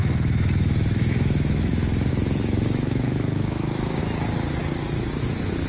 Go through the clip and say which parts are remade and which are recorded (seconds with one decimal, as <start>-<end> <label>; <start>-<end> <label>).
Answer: 0.0-1.7 remade; 1.7-2.1 recorded; 2.1-4.0 remade; 4.0-5.7 recorded

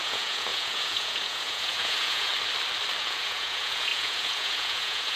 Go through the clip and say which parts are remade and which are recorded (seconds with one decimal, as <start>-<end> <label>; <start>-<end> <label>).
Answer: 0.0-2.3 remade; 2.3-3.0 recorded; 3.0-5.2 remade

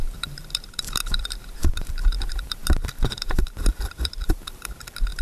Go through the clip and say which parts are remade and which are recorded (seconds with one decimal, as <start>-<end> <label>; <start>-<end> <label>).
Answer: 0.0-5.2 remade

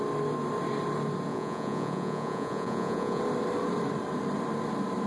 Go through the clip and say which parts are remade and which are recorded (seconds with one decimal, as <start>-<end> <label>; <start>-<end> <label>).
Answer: 0.0-1.3 recorded; 1.3-3.2 remade; 3.2-5.1 recorded

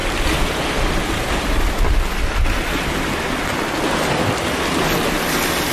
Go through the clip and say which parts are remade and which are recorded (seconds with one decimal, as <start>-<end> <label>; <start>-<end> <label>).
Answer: 0.0-5.7 recorded

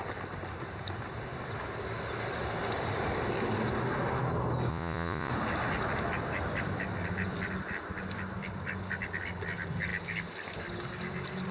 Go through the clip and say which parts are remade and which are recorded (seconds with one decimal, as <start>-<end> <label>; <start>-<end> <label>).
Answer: 0.0-4.7 recorded; 4.7-5.3 remade; 5.3-11.5 recorded